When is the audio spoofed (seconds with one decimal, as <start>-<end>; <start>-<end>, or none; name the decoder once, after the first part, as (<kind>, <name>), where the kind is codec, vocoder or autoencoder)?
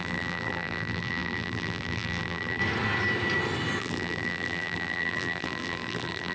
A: 0.0-2.6 (vocoder, BigVGAN v2); 3.8-6.3